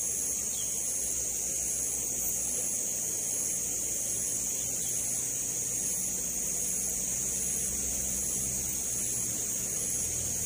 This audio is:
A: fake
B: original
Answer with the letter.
B